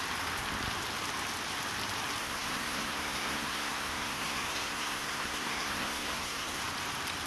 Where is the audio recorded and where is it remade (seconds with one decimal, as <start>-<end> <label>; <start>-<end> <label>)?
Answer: 0.0-2.2 recorded; 2.2-6.6 remade; 6.6-7.3 recorded